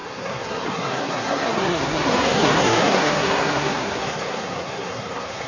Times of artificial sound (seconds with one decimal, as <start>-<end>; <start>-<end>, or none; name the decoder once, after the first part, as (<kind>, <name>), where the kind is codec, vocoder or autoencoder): 0.0-5.5 (codec, SNAC)